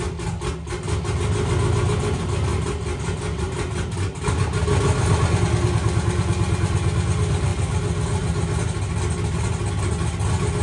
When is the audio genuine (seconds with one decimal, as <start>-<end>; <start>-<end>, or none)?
0.0-10.6